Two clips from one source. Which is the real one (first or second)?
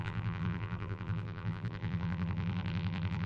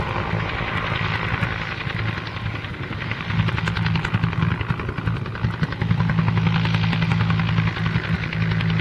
second